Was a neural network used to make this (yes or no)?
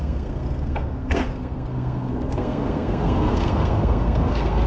yes